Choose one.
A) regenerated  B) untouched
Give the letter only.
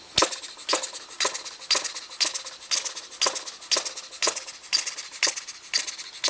B